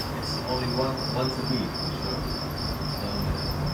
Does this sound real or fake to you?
real